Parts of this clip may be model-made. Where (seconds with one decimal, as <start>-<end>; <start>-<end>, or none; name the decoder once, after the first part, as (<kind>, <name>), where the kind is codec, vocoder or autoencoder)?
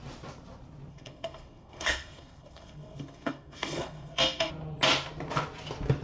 0.9-4.5 (codec, SNAC)